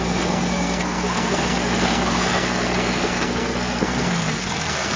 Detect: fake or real fake